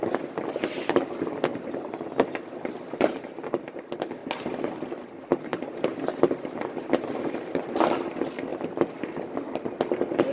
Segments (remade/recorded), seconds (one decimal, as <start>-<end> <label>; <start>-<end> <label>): 0.0-1.5 recorded; 1.5-3.1 remade; 3.1-5.5 recorded; 5.5-6.7 remade; 6.7-8.5 recorded; 8.5-9.7 remade; 9.7-10.3 recorded